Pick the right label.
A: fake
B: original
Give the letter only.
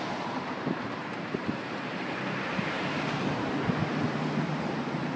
A